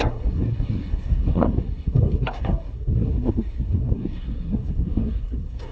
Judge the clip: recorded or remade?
remade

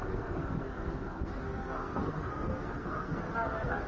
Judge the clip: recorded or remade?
remade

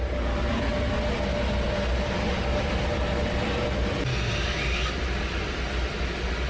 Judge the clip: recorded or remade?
recorded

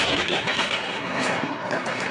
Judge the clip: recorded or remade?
remade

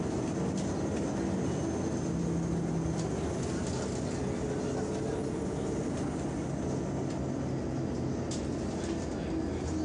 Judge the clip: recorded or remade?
recorded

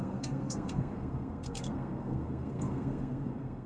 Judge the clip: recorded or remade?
remade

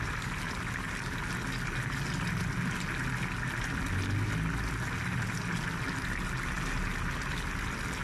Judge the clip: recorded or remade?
recorded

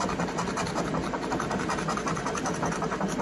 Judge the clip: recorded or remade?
recorded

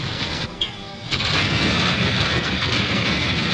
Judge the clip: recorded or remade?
remade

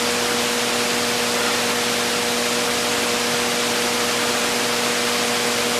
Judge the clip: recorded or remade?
recorded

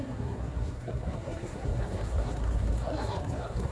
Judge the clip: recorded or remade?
remade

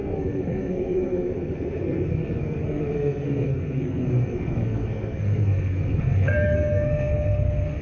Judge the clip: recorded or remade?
remade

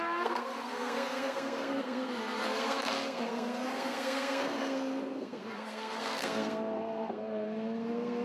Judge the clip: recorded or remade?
remade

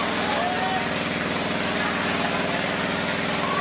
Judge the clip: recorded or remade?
recorded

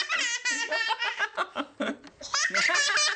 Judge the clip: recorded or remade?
recorded